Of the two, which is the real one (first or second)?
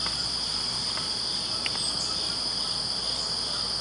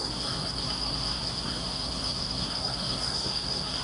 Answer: first